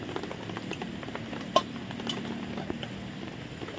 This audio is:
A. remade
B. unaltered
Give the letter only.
B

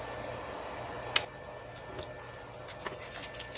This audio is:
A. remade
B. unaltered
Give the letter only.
B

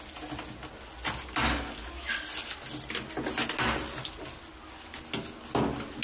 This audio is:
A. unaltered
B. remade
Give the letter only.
A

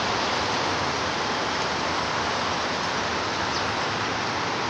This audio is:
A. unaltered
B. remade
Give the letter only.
A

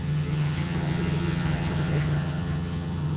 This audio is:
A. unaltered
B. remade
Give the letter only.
B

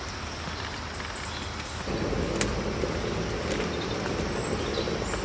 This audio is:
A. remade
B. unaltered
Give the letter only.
B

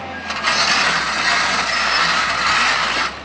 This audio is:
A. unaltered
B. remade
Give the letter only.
A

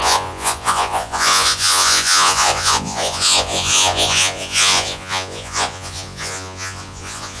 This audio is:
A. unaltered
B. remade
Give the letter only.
B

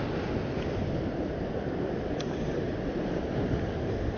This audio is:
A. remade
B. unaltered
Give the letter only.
B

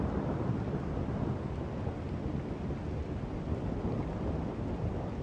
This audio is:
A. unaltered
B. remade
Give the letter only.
A